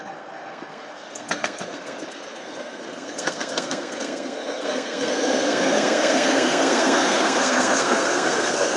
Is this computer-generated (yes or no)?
yes